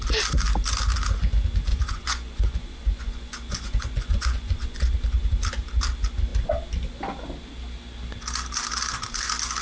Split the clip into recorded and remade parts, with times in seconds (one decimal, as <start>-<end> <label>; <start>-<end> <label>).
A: 0.0-1.7 recorded; 1.7-4.9 remade; 4.9-9.6 recorded